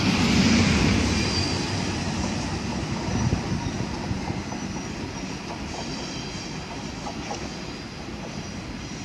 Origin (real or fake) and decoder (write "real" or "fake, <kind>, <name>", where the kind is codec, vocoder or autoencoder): real